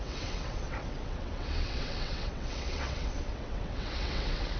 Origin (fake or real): fake